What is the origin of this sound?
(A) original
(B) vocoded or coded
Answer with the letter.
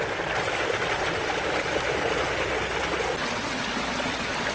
A